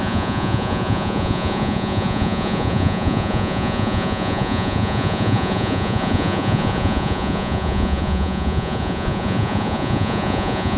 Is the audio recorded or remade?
remade